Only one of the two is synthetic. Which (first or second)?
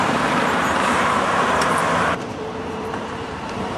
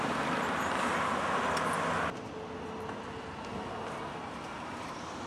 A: first